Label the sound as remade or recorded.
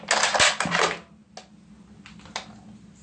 recorded